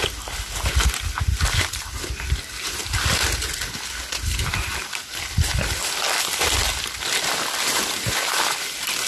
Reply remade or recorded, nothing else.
recorded